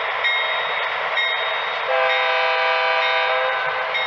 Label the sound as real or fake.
real